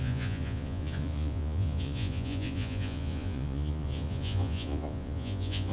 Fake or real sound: fake